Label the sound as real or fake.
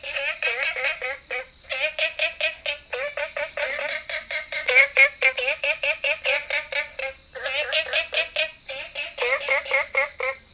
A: real